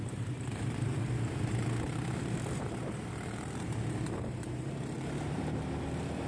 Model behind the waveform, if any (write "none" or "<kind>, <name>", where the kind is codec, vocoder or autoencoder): vocoder, BigVGAN v2